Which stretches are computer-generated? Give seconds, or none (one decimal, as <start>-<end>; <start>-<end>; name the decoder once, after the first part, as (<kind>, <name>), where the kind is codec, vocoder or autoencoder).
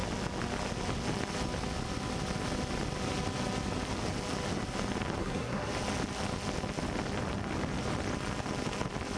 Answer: 5.2-5.7 (codec, SNAC)